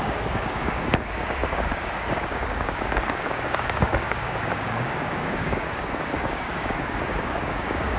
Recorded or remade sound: remade